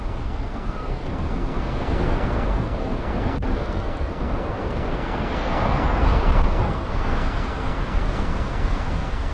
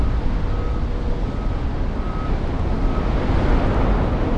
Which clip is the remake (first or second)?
first